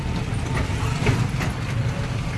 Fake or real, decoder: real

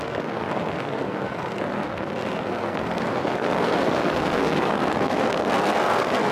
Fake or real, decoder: fake, codec, SNAC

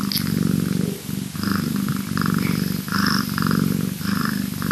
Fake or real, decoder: real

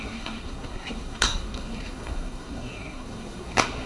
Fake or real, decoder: fake, codec, SNAC